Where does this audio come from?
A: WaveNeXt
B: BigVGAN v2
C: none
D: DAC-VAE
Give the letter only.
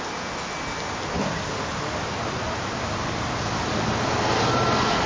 C